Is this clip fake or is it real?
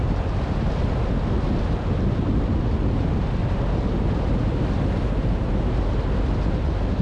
real